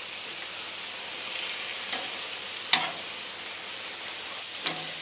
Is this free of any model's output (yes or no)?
yes